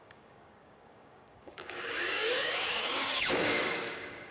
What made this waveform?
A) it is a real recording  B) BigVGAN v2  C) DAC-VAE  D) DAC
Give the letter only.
D